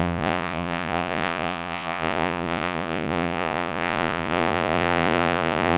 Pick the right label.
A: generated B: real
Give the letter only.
A